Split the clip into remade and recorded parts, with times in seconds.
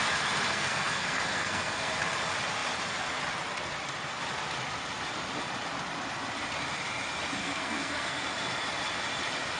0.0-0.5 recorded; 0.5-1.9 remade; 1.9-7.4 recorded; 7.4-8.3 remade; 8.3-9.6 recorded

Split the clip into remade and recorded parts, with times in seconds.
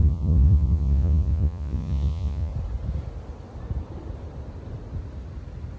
0.0-2.5 remade; 2.5-5.8 recorded